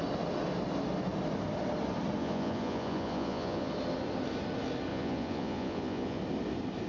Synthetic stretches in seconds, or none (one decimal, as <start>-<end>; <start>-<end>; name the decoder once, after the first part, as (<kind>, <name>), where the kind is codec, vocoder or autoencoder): 2.2-3.7 (vocoder, Vocos); 4.9-6.2